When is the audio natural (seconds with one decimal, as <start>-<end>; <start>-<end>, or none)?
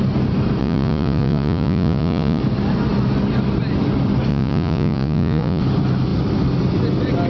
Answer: 0.0-0.6; 2.4-4.3; 5.6-7.3